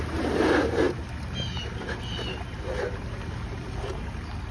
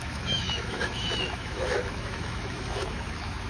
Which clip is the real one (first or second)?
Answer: first